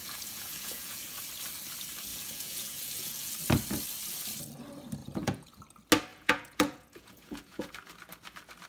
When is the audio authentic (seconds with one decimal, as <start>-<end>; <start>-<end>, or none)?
1.1-2.1; 3.3-5.0; 5.6-6.1; 7.7-8.7